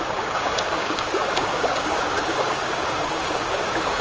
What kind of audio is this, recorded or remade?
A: remade